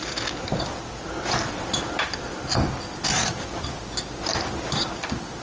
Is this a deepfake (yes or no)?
no